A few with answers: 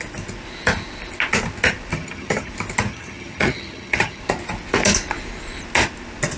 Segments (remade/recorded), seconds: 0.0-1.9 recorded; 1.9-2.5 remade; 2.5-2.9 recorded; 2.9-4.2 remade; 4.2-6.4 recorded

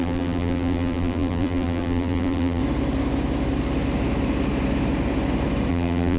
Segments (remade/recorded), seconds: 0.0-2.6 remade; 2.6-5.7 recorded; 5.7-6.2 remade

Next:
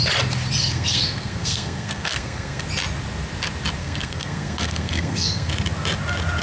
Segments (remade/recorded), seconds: 0.0-0.6 recorded; 0.6-2.6 remade; 2.6-3.8 recorded; 3.8-5.5 remade; 5.5-6.4 recorded